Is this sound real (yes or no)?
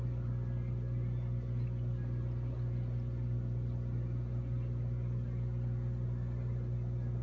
yes